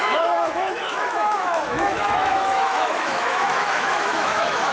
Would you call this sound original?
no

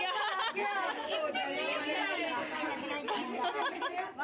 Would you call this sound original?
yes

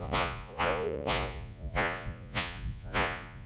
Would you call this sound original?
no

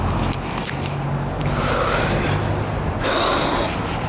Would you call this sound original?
yes